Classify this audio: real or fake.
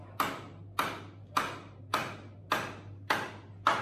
real